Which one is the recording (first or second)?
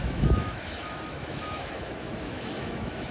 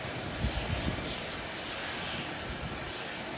second